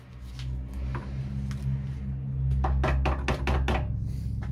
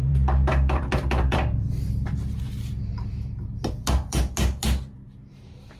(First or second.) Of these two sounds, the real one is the first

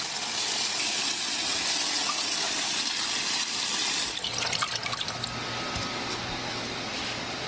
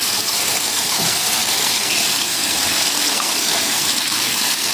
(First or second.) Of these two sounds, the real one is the first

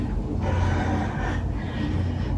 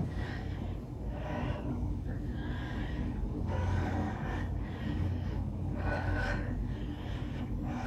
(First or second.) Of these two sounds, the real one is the first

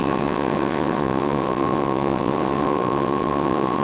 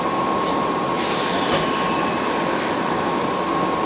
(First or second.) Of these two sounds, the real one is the second